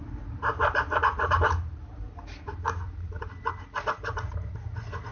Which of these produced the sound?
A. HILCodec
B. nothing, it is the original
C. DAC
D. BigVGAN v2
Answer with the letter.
B